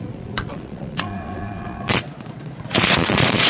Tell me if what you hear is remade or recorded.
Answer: remade